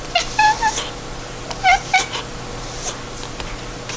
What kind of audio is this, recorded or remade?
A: recorded